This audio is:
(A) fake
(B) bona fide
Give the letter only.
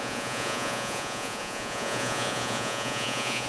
A